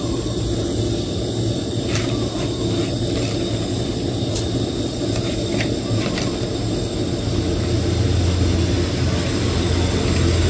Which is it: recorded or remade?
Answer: recorded